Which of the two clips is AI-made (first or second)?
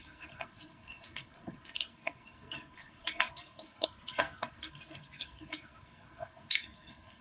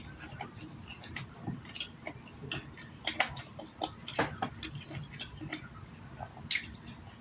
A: first